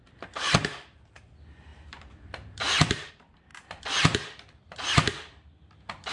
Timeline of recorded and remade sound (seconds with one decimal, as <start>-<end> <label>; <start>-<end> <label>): 0.0-6.1 remade